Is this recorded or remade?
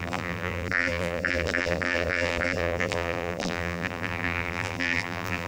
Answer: remade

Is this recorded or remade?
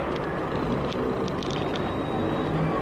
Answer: recorded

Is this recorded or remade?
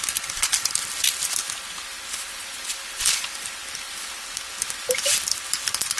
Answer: remade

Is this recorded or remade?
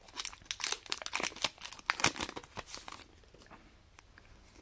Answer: recorded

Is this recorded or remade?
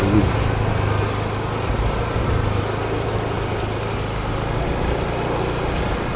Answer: recorded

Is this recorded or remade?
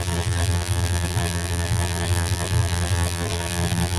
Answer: remade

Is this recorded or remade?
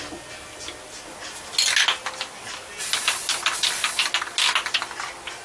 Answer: recorded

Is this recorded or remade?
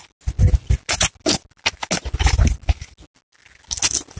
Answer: recorded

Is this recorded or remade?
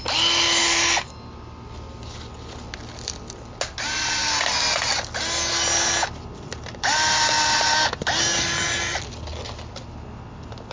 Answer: recorded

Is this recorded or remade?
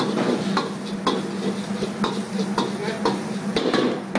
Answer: recorded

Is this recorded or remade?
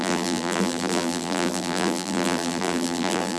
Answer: remade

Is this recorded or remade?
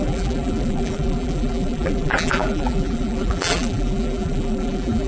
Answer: remade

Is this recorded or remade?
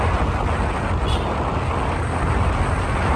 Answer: recorded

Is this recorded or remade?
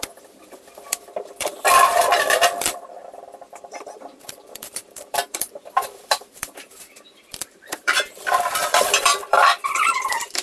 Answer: remade